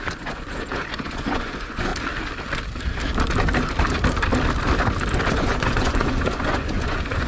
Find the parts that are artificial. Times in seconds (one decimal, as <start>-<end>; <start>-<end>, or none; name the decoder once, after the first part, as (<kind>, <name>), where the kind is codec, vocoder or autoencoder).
0.0-1.9 (vocoder, Vocos); 5.3-7.3